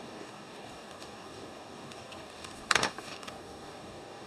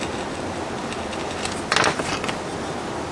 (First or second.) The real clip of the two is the second